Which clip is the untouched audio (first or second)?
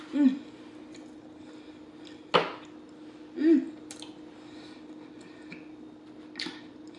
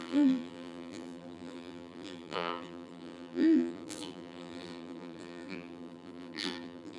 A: first